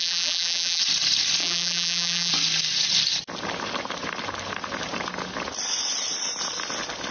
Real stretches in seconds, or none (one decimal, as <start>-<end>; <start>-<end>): 0.8-1.4; 2.3-7.1